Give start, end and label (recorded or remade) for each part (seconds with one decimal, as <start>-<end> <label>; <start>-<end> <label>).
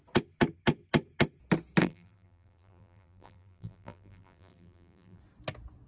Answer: 0.0-1.8 recorded; 1.8-5.2 remade; 5.2-5.9 recorded